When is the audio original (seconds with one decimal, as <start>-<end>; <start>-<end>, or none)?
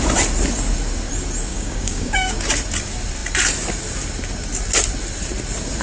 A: 0.0-1.5; 2.3-5.8